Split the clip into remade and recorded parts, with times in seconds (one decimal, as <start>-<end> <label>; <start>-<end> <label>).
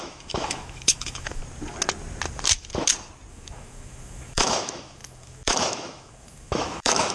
0.0-1.4 remade; 1.4-3.3 recorded; 3.3-7.1 remade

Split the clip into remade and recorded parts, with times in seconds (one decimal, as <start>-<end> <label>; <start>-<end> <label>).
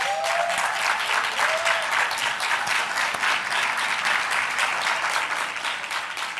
0.0-6.4 recorded